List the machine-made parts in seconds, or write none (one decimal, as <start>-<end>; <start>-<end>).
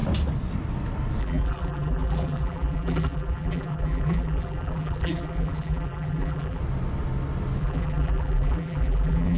1.2-6.6; 7.6-9.4